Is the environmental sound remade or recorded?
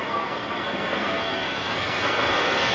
remade